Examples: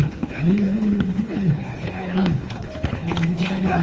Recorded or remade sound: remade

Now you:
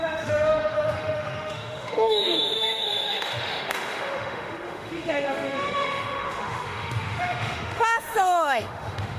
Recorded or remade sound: remade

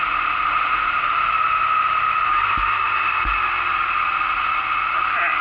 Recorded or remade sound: recorded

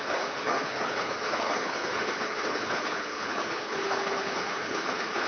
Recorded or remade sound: remade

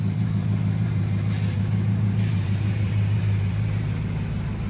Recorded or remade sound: remade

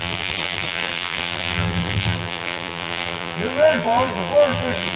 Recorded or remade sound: remade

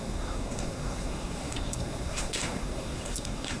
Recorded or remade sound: remade